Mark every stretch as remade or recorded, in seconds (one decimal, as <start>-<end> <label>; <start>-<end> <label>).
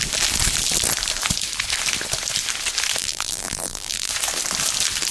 0.0-3.0 recorded; 3.0-4.1 remade; 4.1-5.1 recorded